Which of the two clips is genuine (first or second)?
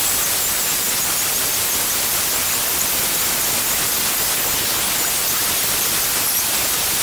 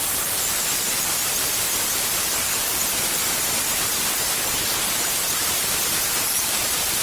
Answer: first